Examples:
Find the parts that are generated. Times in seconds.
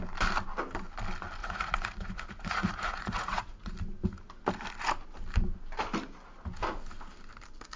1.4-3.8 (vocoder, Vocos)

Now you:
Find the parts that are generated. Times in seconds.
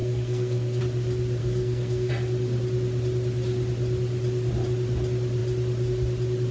0.0-0.8 (codec, SNAC); 1.4-2.1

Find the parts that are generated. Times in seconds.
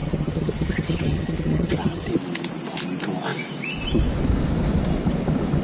0.0-2.1 (vocoder, HiFi-GAN)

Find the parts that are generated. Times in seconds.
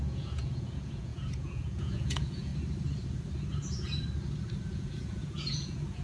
0.0-2.5 (vocoder, Vocos); 4.6-6.0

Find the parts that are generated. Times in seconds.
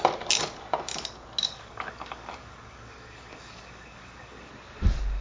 1.4-4.5 (codec, DAC)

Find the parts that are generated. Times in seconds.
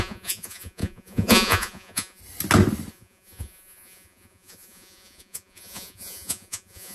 0.0-2.2 (vocoder, Vocos); 2.9-6.9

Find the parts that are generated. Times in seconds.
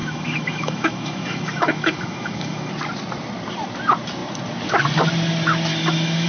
0.0-2.7 (autoencoder, DAC-VAE); 5.7-6.3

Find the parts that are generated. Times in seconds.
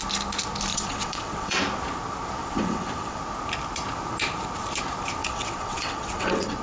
0.7-1.6 (vocoder, WaveNeXt); 2.4-3.2; 5.2-6.6